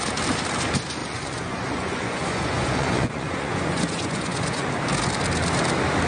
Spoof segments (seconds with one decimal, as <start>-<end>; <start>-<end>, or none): 1.0-4.7